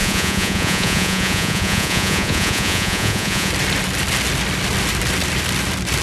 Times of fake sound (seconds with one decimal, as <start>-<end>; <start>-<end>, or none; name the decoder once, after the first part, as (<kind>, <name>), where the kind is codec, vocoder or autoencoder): 0.0-3.5 (vocoder, Vocos)